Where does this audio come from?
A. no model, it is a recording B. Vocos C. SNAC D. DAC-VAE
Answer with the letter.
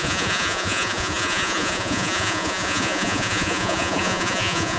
B